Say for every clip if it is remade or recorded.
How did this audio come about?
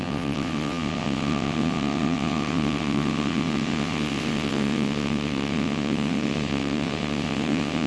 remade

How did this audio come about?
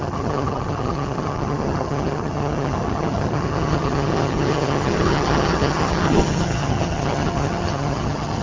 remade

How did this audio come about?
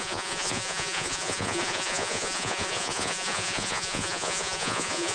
remade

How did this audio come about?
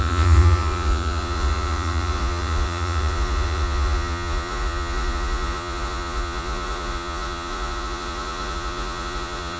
remade